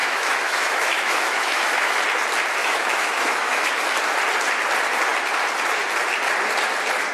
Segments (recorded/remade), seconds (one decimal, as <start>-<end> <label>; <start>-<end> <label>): 0.0-2.0 remade; 2.0-2.6 recorded; 2.6-3.7 remade; 3.7-7.1 recorded